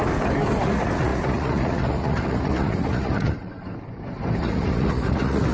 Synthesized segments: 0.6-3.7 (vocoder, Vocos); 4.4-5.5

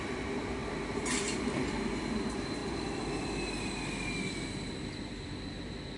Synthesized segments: none

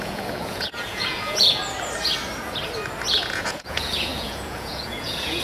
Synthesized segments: 0.0-1.6 (vocoder, Vocos); 3.1-5.4

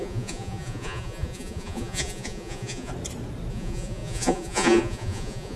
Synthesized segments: 0.0-2.9 (vocoder, Vocos); 3.5-5.6